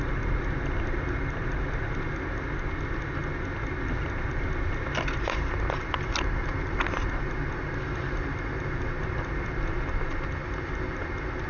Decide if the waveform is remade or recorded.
recorded